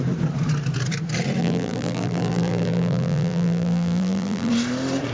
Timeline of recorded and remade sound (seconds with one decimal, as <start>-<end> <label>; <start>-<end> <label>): 0.0-1.4 recorded; 1.4-4.5 remade; 4.5-5.1 recorded